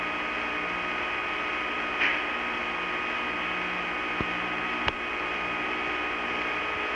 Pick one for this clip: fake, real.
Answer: real